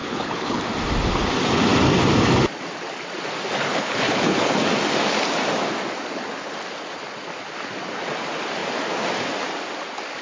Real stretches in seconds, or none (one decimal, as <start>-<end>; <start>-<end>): 0.6-3.7; 4.5-10.2